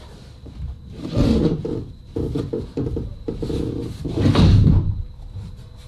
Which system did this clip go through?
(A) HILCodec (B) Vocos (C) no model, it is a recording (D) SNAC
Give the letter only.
C